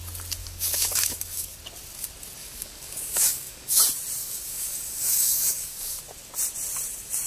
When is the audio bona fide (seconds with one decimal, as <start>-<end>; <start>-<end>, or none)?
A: 0.0-0.4; 1.6-2.4; 3.8-4.2; 6.0-7.3